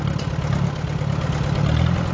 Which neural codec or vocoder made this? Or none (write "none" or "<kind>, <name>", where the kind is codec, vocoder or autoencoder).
none